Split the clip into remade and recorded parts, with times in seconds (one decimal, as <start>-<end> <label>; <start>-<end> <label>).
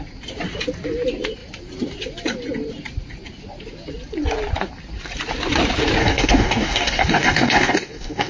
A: 0.0-6.0 recorded; 6.0-8.3 remade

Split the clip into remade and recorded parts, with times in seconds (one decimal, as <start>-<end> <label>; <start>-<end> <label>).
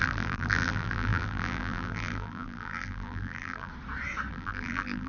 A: 0.0-3.7 remade; 3.7-4.3 recorded; 4.3-5.1 remade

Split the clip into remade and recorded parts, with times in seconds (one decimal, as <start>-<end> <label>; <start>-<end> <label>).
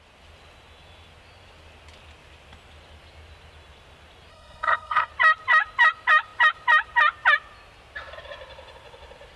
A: 0.0-4.3 recorded; 4.3-5.1 remade; 5.1-9.4 recorded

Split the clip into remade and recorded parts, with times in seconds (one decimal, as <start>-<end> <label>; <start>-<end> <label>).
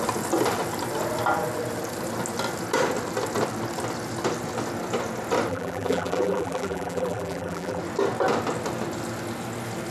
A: 0.0-5.5 recorded; 5.5-7.8 remade; 7.8-9.9 recorded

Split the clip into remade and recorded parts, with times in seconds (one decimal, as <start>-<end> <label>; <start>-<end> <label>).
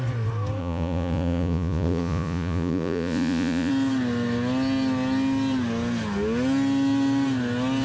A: 0.0-0.6 recorded; 0.6-3.7 remade; 3.7-7.8 recorded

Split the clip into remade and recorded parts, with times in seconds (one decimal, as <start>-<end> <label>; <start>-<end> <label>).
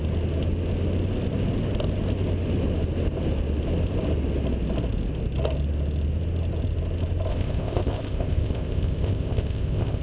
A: 0.0-7.3 recorded; 7.3-10.0 remade